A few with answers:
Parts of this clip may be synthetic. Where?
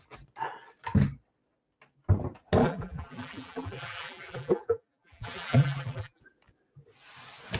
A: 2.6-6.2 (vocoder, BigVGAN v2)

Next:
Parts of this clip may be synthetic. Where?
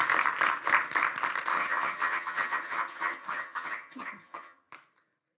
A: 1.5-4.7 (vocoder, HiFi-GAN)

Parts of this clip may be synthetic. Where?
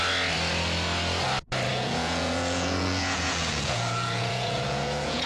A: 1.7-5.3 (vocoder, Vocos)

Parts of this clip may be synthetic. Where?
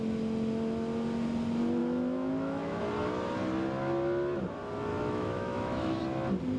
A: 1.8-2.8 (autoencoder, DAC-VAE); 4.9-6.0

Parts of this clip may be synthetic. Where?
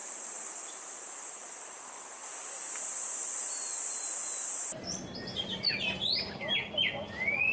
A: 0.0-7.5 (vocoder, BigVGAN v2)